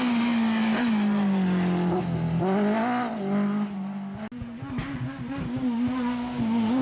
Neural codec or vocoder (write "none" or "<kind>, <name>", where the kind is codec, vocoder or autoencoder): none